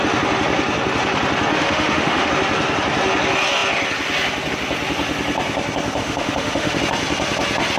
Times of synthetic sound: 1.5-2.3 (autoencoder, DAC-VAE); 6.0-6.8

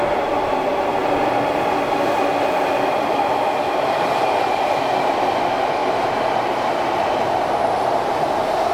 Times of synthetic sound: none